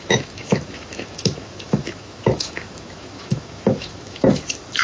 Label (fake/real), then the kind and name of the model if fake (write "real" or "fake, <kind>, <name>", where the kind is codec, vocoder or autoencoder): fake, autoencoder, DAC-VAE